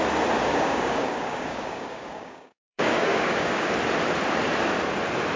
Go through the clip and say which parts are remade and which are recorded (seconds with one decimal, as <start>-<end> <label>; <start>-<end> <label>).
0.0-0.5 recorded; 0.5-3.7 remade; 3.7-5.4 recorded